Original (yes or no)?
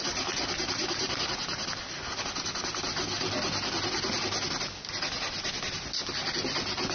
yes